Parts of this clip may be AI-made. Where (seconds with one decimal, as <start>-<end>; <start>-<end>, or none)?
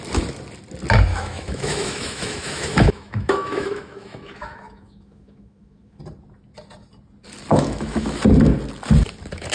1.1-6.0; 7.5-8.2